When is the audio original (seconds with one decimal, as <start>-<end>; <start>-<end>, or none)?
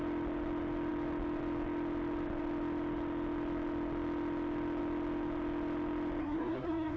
0.0-6.2